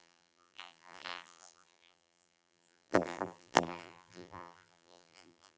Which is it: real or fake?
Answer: fake